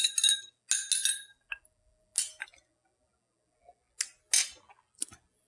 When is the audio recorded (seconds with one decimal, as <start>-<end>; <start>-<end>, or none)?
0.0-5.5